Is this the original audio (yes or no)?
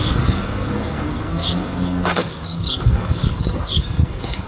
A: no